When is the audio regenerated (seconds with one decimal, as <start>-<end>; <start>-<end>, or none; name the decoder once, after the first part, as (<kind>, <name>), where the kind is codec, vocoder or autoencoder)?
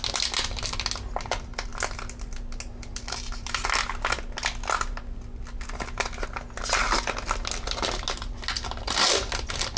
none